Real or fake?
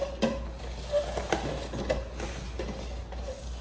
real